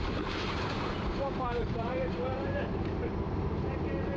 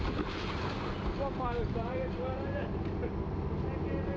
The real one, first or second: second